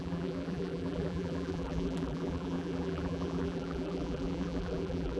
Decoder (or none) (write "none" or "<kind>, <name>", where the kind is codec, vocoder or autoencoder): vocoder, BigVGAN v2